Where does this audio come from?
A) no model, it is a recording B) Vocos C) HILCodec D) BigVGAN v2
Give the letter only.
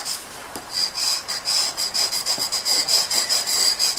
D